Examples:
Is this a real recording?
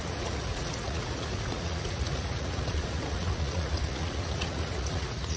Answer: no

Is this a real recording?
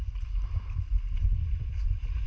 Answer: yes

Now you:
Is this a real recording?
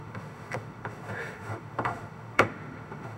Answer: no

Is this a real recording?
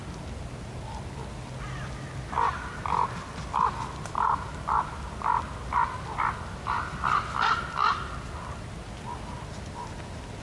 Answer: yes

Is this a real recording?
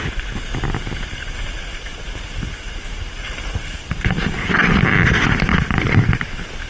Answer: yes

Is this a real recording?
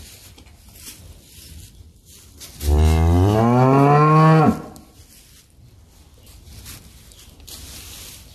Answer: yes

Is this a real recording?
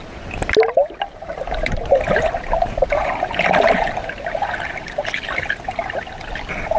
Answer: yes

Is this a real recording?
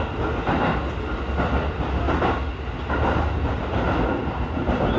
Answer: yes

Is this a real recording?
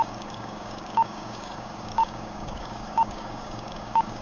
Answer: no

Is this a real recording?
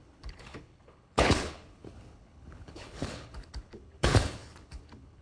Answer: no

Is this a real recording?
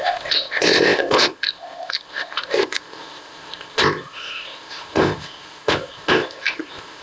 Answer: no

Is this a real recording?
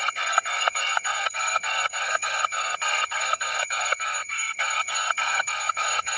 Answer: no